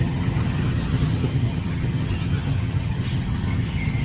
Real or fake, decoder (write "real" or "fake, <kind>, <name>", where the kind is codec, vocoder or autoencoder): fake, vocoder, HiFi-GAN